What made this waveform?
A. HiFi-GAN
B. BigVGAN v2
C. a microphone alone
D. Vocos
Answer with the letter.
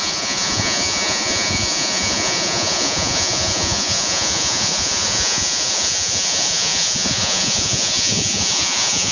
D